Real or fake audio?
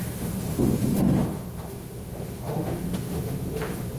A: fake